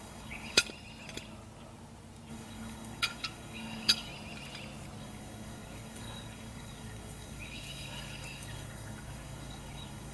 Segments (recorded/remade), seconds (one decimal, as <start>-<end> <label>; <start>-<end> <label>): 0.0-0.6 remade; 0.6-2.3 recorded; 2.3-4.1 remade; 4.1-5.0 recorded; 5.0-10.1 remade